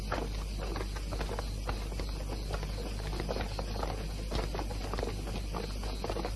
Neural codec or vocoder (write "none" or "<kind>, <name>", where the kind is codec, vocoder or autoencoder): none